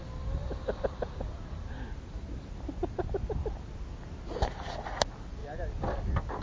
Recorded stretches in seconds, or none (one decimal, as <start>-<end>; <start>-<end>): 0.0-0.4; 3.7-5.4